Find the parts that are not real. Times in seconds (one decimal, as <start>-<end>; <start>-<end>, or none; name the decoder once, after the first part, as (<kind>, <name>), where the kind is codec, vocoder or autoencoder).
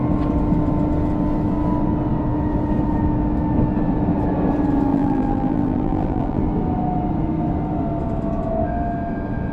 4.9-6.4 (vocoder, BigVGAN v2)